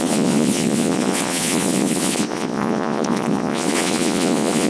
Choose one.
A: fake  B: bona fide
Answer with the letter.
A